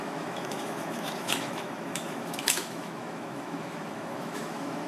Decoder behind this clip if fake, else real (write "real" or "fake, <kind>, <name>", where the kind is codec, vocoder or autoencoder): fake, autoencoder, DAC-VAE